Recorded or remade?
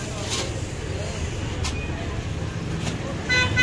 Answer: recorded